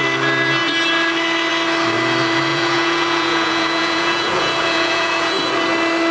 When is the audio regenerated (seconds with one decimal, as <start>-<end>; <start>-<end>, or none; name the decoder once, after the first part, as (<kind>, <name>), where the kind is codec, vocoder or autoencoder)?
2.5-5.4 (vocoder, Vocos)